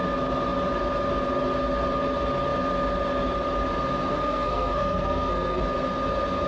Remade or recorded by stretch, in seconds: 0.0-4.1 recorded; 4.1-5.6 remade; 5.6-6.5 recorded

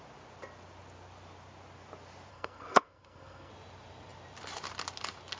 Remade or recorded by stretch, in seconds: 0.0-2.3 recorded; 2.3-3.5 remade; 3.5-5.4 recorded

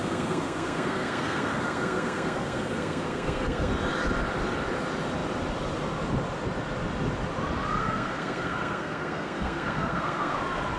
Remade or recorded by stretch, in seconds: 0.0-3.7 remade; 3.7-7.8 recorded; 7.8-10.4 remade; 10.4-10.8 recorded

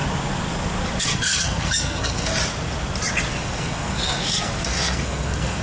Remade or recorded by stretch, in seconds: 0.0-1.0 recorded; 1.0-2.3 remade; 2.3-3.3 recorded; 3.3-5.6 remade

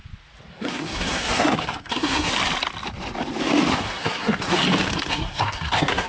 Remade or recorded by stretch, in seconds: 0.0-0.5 recorded; 0.5-2.3 remade; 2.3-3.7 recorded; 3.7-4.6 remade; 4.6-5.1 recorded; 5.1-6.1 remade

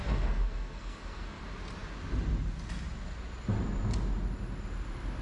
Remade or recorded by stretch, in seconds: 0.0-1.4 remade; 1.4-5.2 recorded